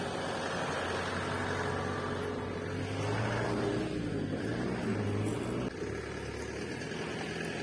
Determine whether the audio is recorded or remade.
recorded